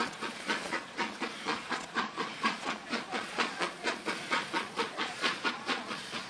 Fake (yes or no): yes